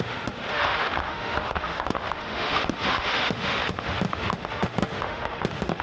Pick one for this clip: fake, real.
fake